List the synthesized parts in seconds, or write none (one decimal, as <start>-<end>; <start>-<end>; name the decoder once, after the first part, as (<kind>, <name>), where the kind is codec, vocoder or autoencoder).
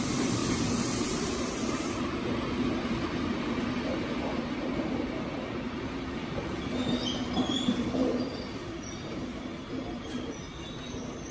0.4-1.3 (vocoder, BigVGAN v2); 6.2-10.5